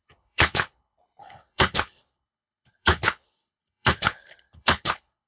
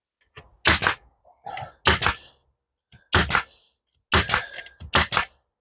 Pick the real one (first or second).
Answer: second